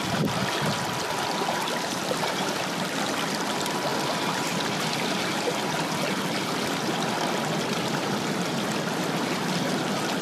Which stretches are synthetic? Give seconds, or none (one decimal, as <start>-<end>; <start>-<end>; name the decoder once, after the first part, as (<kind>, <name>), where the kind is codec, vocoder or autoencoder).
none